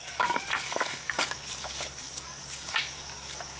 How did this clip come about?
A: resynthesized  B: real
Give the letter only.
A